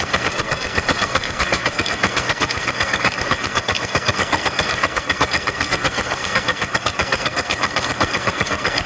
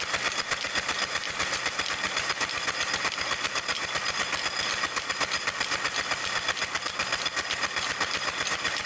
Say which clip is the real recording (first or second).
second